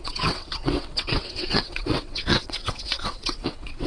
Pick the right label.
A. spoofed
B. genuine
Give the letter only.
A